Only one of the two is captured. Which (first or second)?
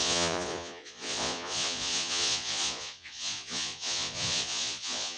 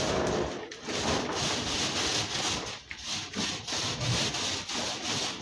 second